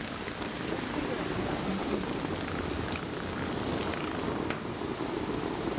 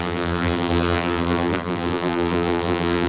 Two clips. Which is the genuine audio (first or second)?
first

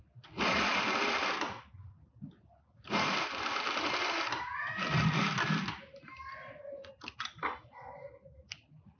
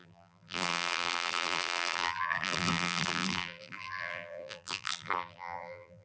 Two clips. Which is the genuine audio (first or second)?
first